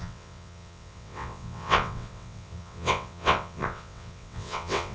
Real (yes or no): no